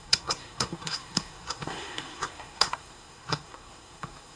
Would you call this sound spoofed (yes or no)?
yes